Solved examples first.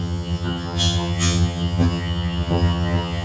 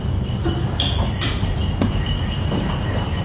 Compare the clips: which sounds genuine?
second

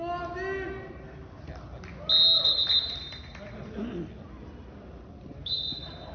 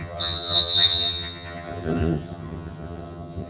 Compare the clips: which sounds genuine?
first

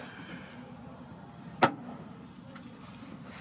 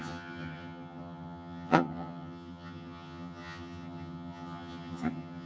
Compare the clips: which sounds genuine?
first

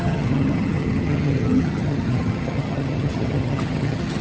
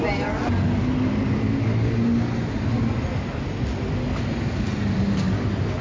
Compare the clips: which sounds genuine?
second